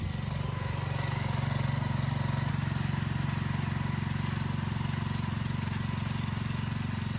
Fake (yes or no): no